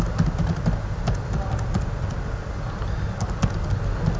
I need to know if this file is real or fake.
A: real